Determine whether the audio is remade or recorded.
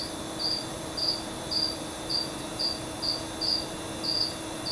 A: remade